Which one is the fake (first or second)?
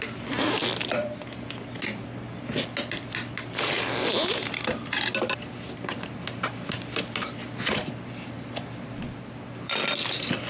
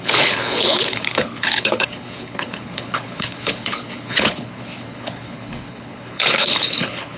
second